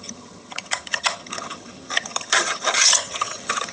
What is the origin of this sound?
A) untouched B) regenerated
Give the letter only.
B